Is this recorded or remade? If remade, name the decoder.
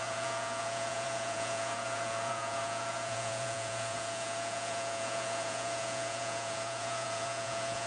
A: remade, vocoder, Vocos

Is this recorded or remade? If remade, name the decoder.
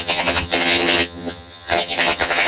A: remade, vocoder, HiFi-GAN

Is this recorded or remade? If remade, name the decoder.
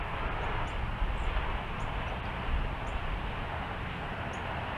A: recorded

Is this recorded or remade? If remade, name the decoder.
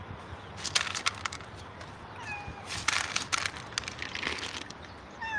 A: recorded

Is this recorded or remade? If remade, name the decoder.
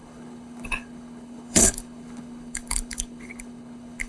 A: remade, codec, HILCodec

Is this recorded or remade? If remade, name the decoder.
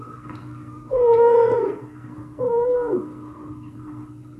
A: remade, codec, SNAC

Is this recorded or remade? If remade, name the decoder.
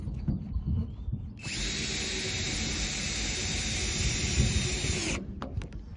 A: recorded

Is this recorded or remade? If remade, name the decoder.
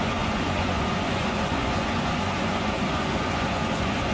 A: remade, vocoder, Vocos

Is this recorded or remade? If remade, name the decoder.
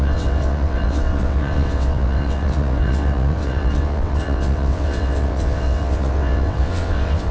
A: remade, vocoder, WaveNeXt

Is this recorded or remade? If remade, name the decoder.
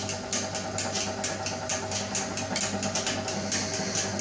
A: recorded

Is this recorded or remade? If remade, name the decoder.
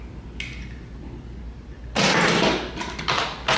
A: recorded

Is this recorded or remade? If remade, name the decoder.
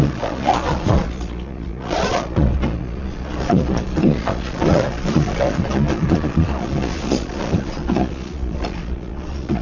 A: remade, vocoder, Vocos